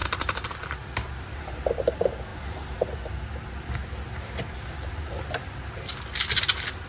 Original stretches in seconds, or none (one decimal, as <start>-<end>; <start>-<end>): 1.1-6.9